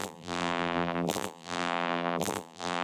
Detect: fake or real fake